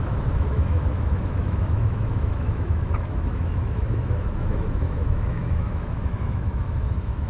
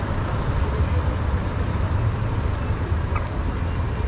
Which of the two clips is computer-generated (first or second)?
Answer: first